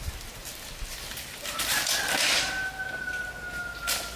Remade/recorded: recorded